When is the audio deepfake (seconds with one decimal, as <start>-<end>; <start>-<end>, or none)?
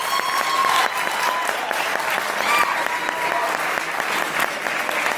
none